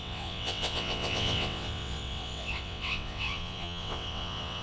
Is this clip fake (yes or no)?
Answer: yes